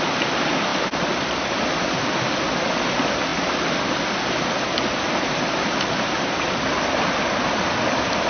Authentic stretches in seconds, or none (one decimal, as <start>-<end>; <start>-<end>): 0.0-8.3